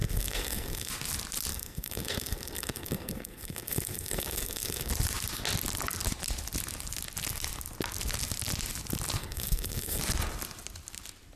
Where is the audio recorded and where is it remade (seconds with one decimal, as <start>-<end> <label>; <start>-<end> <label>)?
0.0-0.9 remade; 0.9-1.5 recorded; 1.5-4.9 remade; 4.9-9.2 recorded; 9.2-10.0 remade; 10.0-11.4 recorded